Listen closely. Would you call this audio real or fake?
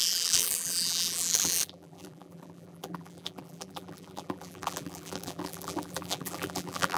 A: fake